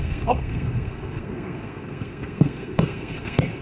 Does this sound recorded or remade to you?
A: remade